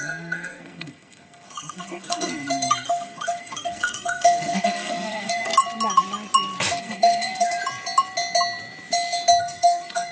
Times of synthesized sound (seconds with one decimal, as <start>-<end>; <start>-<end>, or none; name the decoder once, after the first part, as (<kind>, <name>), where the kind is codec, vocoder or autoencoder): 0.0-5.5 (codec, SNAC); 6.8-7.6; 9.4-10.1